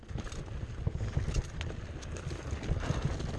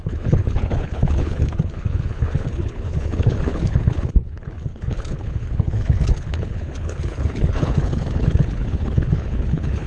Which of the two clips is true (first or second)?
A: first